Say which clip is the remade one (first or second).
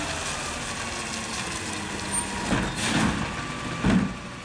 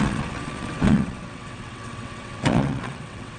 second